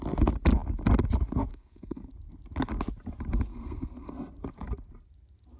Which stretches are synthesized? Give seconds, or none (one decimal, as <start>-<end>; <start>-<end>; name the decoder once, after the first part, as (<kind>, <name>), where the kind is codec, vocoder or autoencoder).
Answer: 1.5-2.1 (codec, SNAC); 3.5-4.1